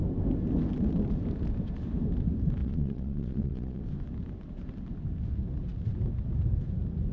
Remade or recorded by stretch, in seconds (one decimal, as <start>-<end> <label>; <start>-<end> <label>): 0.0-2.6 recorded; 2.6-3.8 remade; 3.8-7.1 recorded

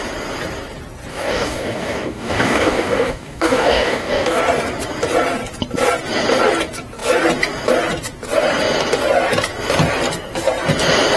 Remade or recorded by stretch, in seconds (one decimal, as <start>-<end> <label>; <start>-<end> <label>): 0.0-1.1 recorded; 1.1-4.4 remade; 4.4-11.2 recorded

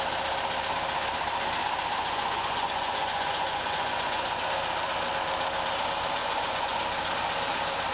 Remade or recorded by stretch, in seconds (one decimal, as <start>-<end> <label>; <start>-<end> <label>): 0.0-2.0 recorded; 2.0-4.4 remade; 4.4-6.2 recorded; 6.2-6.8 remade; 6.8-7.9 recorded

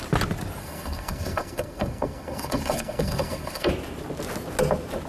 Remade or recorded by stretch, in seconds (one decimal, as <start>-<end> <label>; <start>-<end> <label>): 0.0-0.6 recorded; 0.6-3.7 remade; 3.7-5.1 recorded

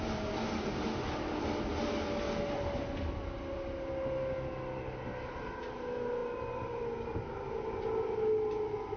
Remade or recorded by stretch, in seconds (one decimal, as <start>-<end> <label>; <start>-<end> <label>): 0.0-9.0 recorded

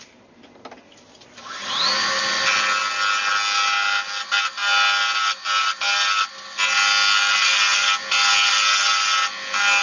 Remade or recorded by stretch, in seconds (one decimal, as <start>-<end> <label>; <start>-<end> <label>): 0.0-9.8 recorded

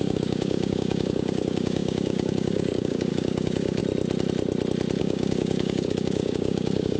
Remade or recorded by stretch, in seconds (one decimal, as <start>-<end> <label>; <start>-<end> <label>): 0.0-3.8 remade; 3.8-5.0 recorded; 5.0-7.0 remade

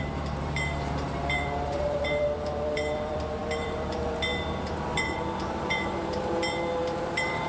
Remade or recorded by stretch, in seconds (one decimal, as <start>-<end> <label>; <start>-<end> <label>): 0.0-7.5 remade